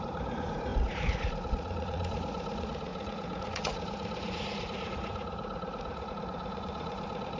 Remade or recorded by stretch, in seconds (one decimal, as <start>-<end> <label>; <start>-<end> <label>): 0.0-7.4 remade